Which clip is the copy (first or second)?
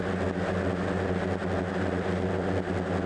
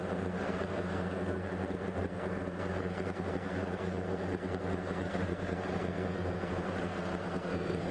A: second